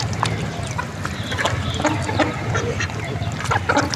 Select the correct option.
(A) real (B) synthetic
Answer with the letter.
A